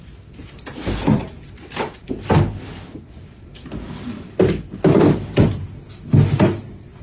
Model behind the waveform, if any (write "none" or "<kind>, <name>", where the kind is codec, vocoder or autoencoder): none